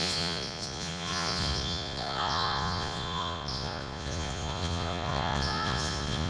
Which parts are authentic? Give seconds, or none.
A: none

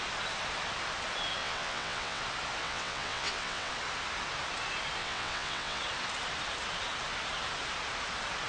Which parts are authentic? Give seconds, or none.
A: 0.0-1.4; 2.2-2.6; 3.7-5.0; 5.8-8.5

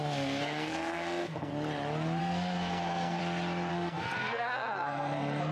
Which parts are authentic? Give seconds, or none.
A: 1.5-2.2; 3.2-3.7

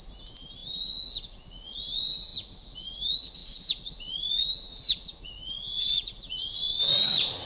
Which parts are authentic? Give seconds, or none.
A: none

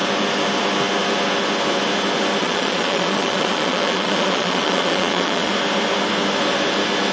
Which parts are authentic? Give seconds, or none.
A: 0.0-2.4; 5.5-7.1

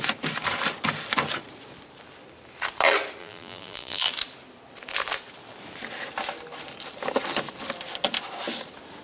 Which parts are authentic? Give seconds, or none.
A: 0.0-3.2; 4.1-9.0

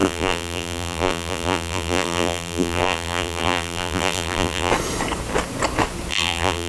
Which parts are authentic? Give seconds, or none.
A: 4.7-6.1

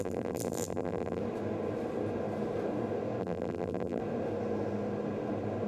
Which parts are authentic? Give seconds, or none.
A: 1.2-3.2; 4.0-5.7